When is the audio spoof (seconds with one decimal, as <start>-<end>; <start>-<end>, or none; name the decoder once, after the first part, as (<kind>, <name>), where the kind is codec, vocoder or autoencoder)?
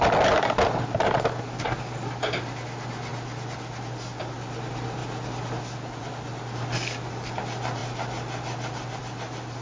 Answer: none